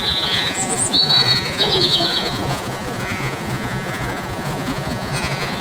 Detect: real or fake fake